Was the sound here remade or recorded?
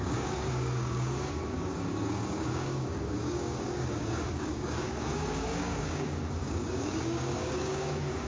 remade